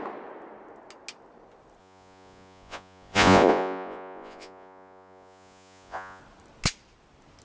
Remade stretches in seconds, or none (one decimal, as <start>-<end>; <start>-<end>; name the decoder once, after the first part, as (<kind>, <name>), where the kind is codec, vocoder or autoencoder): 1.8-6.2 (vocoder, Vocos)